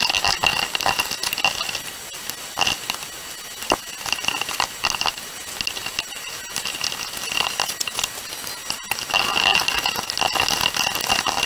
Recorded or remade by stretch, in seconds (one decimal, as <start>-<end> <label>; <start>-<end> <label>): 0.0-11.5 recorded